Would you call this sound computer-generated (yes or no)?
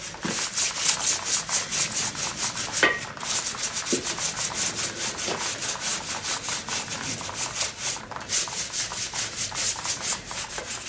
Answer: no